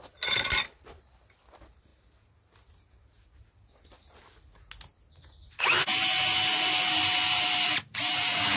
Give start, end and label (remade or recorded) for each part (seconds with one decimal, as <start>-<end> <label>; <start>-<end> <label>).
0.0-1.9 remade; 1.9-7.0 recorded; 7.0-8.6 remade